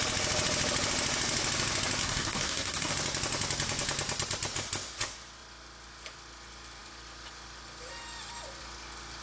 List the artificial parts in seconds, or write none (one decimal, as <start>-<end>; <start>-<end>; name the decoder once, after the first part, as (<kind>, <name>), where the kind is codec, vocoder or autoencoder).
2.0-2.9 (codec, SNAC)